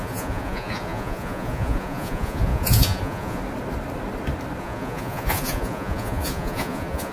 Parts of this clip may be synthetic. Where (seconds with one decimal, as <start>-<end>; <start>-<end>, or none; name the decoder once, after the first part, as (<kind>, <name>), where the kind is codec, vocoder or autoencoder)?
0.0-3.4 (vocoder, Vocos); 4.6-7.1